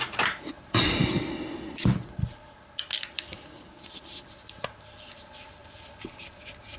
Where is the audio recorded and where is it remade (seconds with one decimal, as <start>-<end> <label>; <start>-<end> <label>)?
0.0-6.8 recorded